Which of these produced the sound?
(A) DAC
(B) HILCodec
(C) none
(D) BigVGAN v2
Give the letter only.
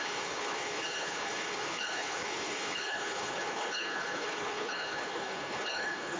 B